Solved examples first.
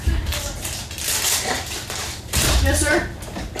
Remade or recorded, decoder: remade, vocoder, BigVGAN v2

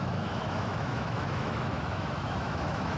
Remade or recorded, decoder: remade, autoencoder, DAC-VAE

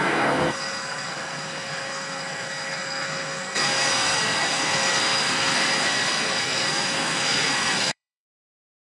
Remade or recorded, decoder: remade, codec, SNAC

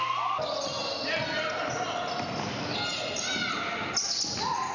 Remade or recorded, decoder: recorded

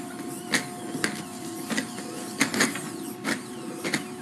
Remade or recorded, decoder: recorded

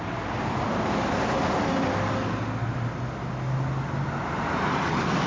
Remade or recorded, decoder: recorded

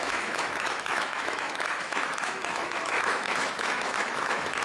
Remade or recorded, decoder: remade, autoencoder, DAC-VAE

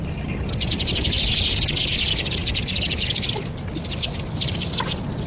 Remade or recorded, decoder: recorded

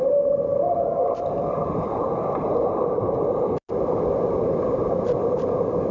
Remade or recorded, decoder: recorded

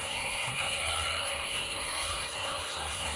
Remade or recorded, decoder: remade, codec, SNAC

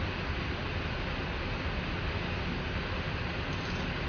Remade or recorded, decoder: recorded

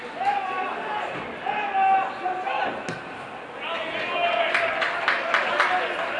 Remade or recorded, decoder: recorded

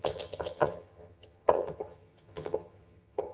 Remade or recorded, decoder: remade, vocoder, HiFi-GAN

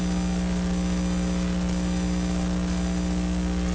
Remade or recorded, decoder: recorded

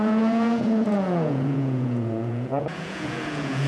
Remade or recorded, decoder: remade, vocoder, Vocos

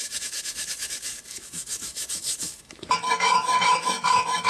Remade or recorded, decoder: remade, autoencoder, DAC-VAE